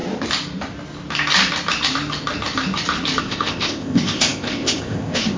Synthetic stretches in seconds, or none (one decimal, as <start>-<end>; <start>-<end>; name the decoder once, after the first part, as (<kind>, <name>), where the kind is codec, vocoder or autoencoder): 3.2-5.4 (codec, ZipCodec)